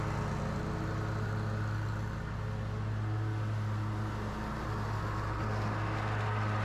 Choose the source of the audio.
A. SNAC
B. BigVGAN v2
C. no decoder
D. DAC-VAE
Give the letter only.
C